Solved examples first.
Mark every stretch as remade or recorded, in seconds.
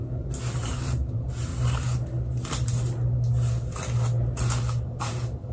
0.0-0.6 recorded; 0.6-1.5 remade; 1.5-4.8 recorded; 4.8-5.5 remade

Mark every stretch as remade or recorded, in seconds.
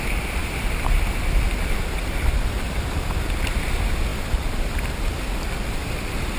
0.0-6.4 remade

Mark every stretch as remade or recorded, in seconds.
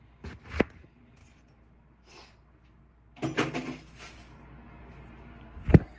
0.0-6.0 recorded